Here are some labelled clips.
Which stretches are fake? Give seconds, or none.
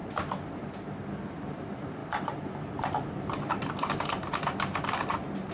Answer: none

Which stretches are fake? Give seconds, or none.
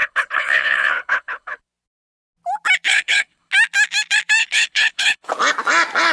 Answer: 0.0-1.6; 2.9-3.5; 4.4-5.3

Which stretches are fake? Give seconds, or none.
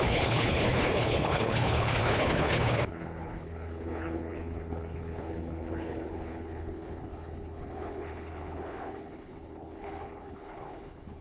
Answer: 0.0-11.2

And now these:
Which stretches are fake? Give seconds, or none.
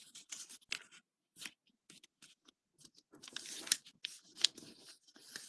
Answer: none